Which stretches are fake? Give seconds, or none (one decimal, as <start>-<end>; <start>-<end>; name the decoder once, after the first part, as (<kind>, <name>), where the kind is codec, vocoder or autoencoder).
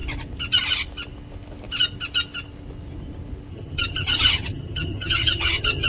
3.5-5.9 (vocoder, HiFi-GAN)